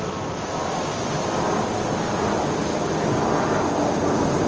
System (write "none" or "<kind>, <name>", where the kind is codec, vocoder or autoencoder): none